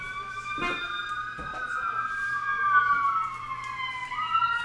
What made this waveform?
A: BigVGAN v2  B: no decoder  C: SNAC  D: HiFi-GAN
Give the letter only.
A